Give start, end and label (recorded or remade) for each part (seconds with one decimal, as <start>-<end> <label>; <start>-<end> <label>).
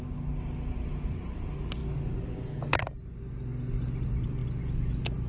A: 0.0-5.3 recorded